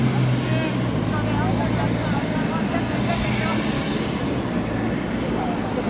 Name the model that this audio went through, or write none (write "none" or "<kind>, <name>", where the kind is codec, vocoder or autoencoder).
none